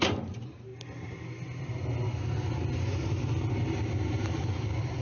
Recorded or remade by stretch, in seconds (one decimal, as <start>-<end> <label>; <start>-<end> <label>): 0.0-0.7 remade; 0.7-3.7 recorded; 3.7-5.0 remade